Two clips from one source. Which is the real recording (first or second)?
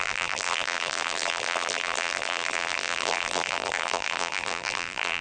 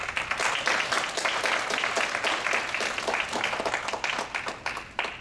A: second